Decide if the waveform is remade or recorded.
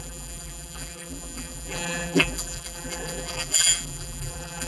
remade